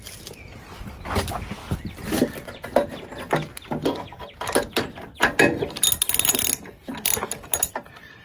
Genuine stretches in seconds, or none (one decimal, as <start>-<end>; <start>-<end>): 0.0-8.2